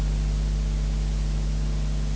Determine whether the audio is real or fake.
real